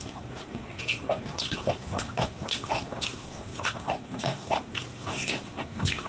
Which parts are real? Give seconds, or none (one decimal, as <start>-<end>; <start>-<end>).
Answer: none